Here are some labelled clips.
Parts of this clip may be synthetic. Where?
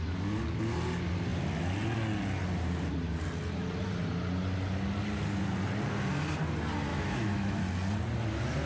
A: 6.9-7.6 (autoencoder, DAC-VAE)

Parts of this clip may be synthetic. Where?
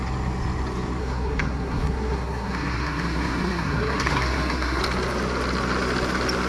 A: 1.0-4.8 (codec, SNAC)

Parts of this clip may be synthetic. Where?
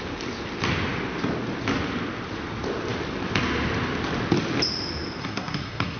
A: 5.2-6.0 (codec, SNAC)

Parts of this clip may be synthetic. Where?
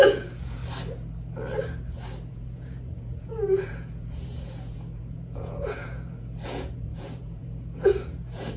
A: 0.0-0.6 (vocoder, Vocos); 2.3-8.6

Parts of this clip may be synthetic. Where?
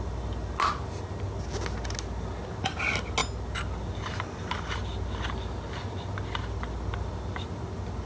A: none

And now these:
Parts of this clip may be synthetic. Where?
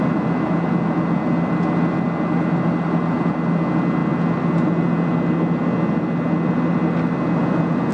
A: none